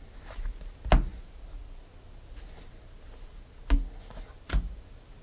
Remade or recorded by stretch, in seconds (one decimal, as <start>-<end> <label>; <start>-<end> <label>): 0.0-5.2 recorded